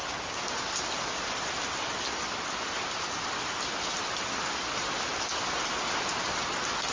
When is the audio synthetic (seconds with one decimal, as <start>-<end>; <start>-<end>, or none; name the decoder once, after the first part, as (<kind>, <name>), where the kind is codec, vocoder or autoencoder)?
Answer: none